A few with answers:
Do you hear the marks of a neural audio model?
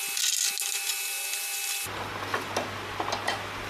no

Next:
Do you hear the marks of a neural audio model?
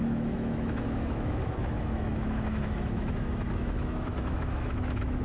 yes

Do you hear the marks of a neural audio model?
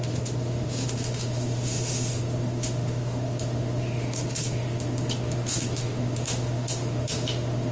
yes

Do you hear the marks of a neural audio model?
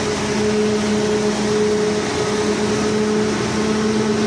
no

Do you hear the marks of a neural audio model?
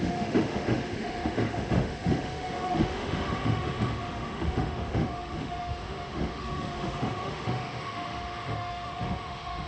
yes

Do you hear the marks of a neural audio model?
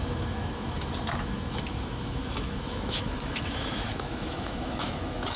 yes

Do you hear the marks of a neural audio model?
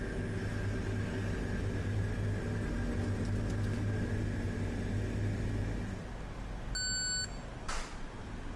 no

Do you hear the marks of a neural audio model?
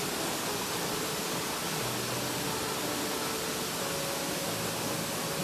no